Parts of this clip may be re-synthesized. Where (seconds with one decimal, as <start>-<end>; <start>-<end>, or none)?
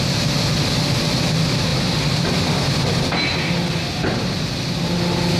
none